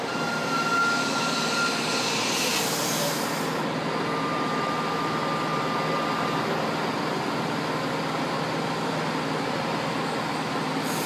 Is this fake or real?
real